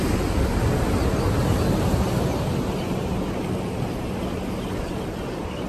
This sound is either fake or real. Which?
real